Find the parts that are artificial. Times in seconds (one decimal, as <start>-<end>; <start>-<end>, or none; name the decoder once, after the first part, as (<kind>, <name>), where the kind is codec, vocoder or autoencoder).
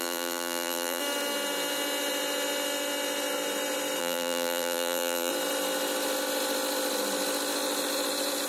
0.0-1.0 (vocoder, BigVGAN v2); 4.0-5.3